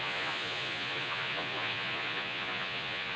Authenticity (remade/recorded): remade